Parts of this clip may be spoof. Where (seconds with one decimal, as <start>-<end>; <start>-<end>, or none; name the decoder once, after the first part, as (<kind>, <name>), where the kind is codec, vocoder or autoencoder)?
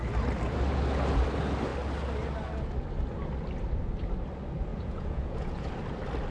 4.7-5.7 (vocoder, Vocos)